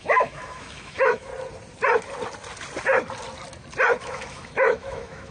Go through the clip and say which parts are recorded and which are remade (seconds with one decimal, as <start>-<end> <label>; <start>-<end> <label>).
0.0-1.3 remade; 1.3-4.0 recorded; 4.0-5.3 remade